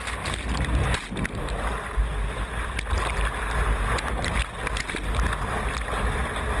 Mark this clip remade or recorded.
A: recorded